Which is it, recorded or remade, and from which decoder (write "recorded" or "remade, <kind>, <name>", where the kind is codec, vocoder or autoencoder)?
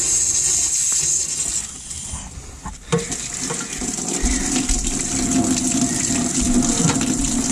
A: recorded